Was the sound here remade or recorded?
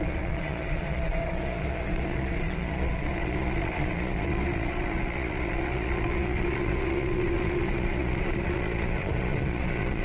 remade